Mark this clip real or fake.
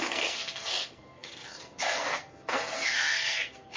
fake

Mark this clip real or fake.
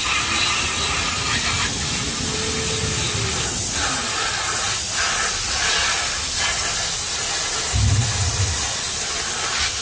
real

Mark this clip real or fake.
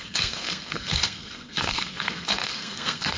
fake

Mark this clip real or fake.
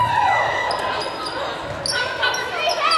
real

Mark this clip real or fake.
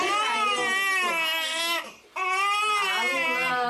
real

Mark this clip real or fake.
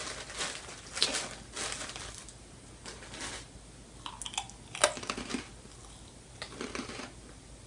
real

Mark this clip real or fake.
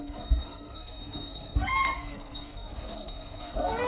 fake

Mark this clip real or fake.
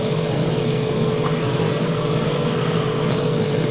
fake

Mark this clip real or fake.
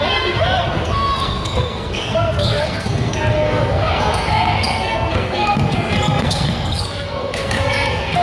fake